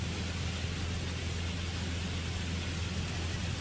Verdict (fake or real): real